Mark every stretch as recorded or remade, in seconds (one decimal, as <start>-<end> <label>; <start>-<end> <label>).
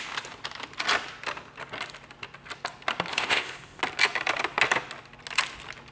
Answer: 0.0-3.1 recorded; 3.1-3.8 remade; 3.8-5.9 recorded